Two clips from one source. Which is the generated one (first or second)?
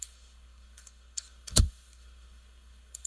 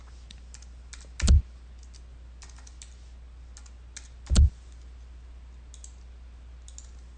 first